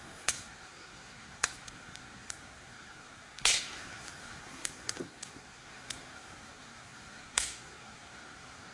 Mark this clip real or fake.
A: fake